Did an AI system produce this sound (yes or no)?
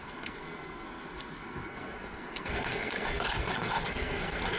yes